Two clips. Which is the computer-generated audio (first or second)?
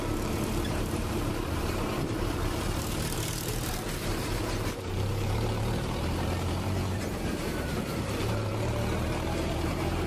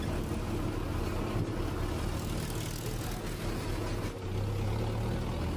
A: first